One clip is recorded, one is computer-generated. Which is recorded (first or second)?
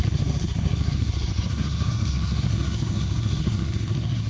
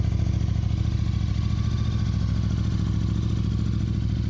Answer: second